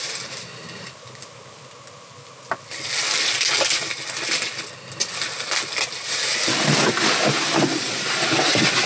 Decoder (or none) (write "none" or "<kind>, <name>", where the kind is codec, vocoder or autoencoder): none